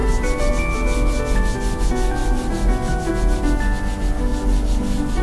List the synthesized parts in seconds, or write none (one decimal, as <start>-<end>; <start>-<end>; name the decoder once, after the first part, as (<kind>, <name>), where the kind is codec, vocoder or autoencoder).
0.0-0.5 (vocoder, BigVGAN v2); 2.2-3.1